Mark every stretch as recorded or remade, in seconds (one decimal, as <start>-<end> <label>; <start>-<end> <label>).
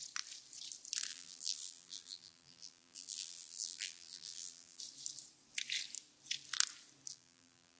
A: 0.0-1.1 recorded; 1.1-4.8 remade; 4.8-7.1 recorded; 7.1-7.8 remade